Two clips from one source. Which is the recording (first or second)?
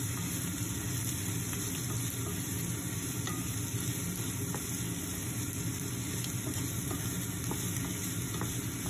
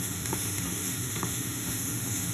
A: first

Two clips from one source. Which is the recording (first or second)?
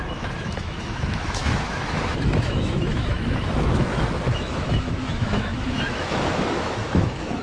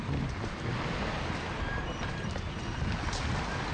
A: second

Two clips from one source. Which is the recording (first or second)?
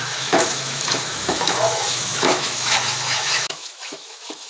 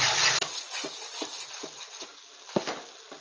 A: second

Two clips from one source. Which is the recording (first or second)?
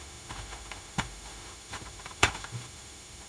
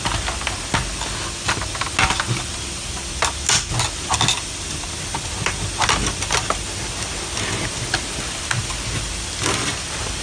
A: second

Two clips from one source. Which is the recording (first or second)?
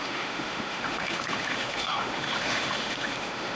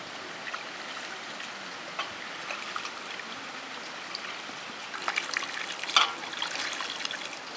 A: second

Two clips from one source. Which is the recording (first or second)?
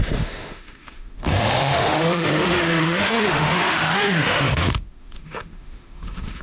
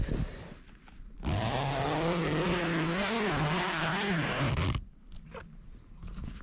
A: second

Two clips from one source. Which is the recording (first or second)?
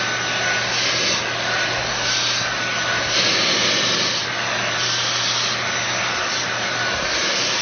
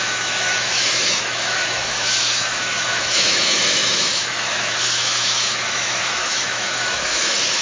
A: first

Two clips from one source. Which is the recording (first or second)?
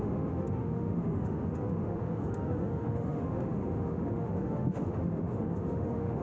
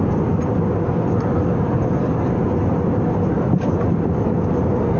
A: second